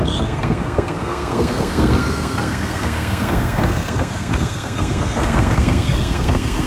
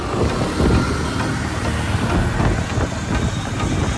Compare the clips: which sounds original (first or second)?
second